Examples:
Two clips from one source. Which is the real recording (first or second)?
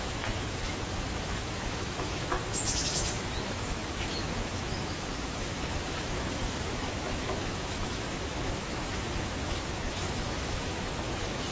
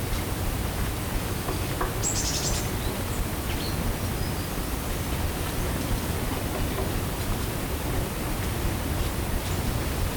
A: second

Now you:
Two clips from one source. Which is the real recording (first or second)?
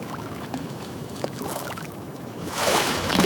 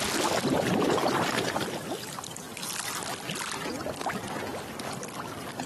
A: second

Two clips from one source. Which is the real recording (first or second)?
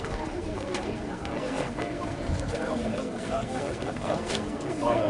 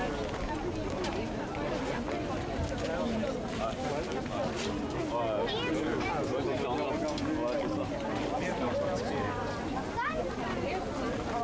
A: second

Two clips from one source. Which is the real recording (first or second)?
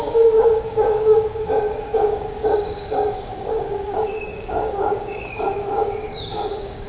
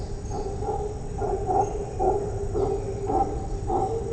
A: second